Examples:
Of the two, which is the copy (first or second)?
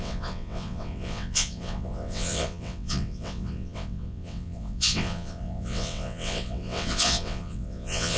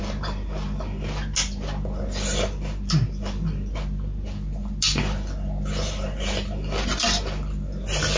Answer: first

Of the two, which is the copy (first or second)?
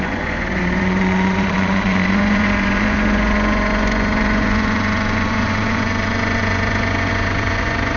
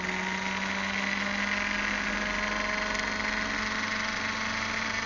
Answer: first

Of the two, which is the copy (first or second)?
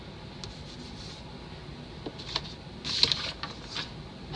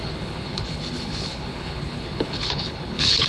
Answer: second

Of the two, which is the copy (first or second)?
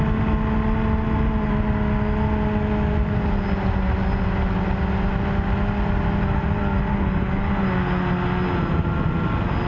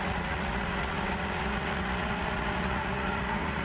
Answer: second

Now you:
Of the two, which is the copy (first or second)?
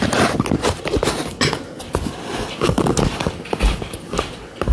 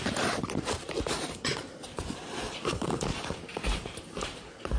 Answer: second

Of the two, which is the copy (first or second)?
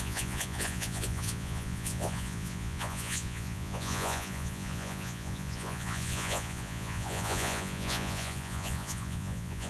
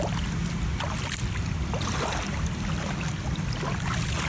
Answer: first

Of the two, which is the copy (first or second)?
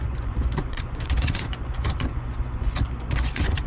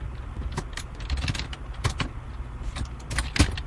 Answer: first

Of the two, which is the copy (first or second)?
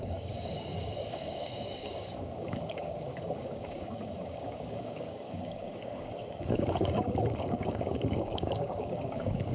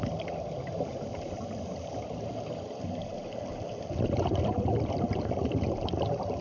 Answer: first